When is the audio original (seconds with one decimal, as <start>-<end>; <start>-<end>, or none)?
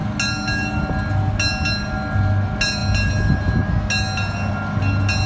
0.0-5.3